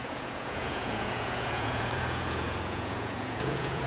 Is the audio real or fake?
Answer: fake